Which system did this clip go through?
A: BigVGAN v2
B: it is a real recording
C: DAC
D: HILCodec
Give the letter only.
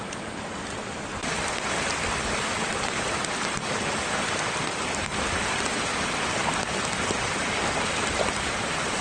B